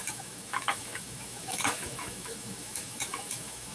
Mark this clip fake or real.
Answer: fake